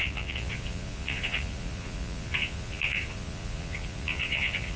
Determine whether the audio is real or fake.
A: fake